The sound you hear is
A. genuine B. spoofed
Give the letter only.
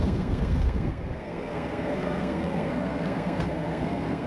B